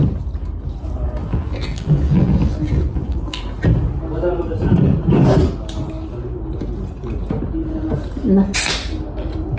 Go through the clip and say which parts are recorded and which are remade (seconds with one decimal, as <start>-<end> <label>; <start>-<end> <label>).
0.0-1.2 recorded; 1.2-3.4 remade; 3.4-9.6 recorded